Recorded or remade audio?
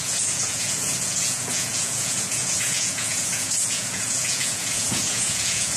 remade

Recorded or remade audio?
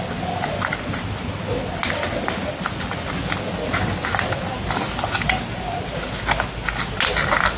recorded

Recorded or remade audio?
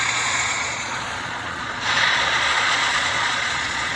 remade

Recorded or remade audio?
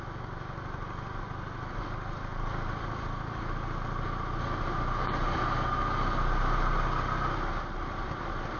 recorded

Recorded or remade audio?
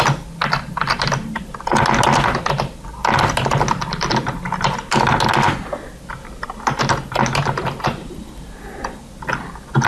recorded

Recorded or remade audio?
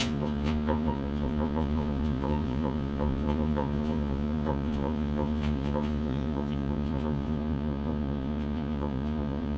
remade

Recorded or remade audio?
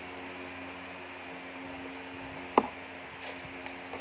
recorded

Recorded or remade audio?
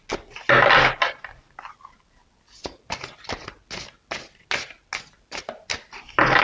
recorded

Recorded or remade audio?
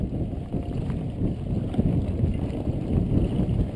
recorded